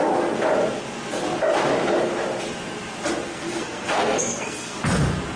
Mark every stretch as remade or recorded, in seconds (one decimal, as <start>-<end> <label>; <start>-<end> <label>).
0.0-3.3 recorded; 3.3-4.8 remade; 4.8-5.4 recorded